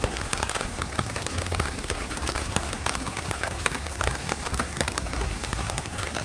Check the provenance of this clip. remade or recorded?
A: remade